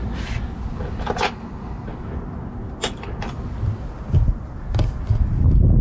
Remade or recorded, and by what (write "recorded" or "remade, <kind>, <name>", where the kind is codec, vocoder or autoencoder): recorded